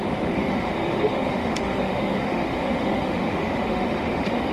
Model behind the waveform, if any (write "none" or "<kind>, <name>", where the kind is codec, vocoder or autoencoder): autoencoder, DAC-VAE